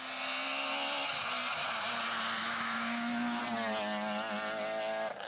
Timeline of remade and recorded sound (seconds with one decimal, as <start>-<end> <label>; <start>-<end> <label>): 0.0-2.4 recorded; 2.4-3.4 remade; 3.4-5.3 recorded